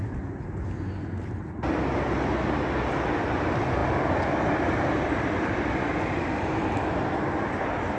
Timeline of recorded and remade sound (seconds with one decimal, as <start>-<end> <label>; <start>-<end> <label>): 0.0-8.0 recorded